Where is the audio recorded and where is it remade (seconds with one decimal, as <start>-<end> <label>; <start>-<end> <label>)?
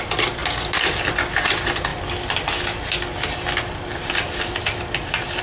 0.0-5.4 recorded